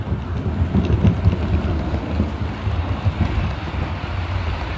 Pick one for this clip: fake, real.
fake